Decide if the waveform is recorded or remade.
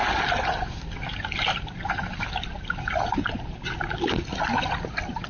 recorded